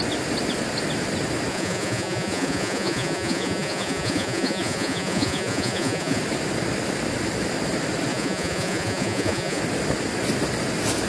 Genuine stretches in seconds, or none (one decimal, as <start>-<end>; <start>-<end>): 0.0-1.5; 6.2-8.1; 9.6-11.1